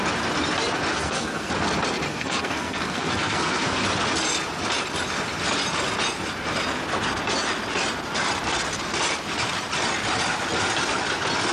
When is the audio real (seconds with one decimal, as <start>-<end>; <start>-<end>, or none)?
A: 0.0-0.9; 1.5-2.1; 3.8-11.5